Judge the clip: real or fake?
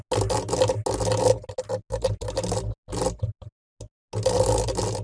real